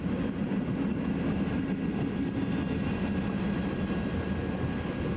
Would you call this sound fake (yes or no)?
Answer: no